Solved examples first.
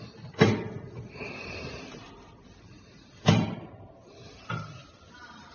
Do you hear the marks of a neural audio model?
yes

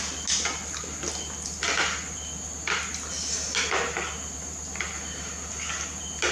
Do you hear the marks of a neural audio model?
no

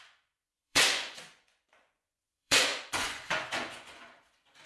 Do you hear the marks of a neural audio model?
yes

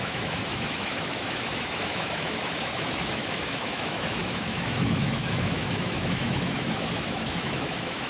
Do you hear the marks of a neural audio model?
yes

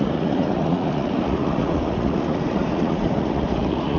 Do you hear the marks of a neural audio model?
yes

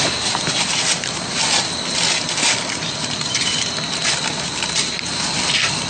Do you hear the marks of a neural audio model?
no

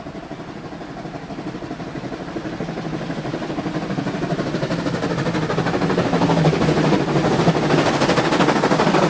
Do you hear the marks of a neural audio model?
no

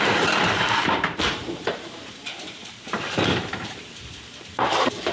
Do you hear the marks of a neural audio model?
yes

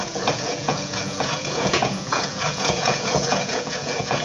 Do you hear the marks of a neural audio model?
yes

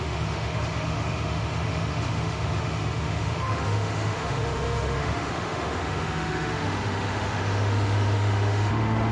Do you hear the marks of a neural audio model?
yes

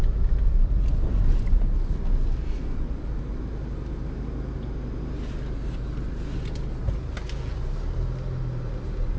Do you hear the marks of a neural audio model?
no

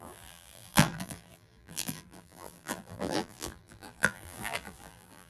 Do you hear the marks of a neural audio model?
yes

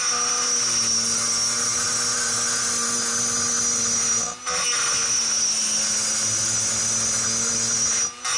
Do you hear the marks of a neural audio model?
no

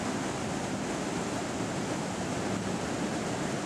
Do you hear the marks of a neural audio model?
no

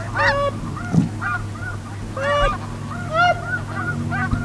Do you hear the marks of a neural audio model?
no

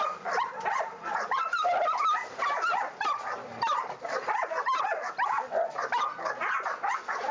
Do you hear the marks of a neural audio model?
no